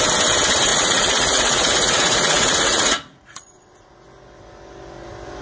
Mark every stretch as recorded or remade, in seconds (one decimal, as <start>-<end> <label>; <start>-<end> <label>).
0.0-0.7 recorded; 0.7-3.9 remade; 3.9-5.4 recorded

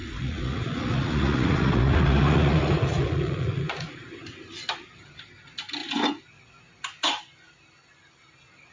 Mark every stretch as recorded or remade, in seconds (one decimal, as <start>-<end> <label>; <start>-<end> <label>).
0.0-4.0 remade; 4.0-8.7 recorded

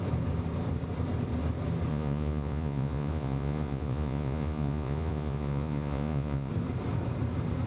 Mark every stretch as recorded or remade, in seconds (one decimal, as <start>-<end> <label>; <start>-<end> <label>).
0.0-1.9 recorded; 1.9-6.5 remade; 6.5-7.7 recorded